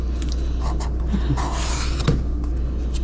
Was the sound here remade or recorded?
recorded